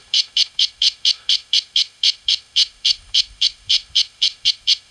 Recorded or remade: remade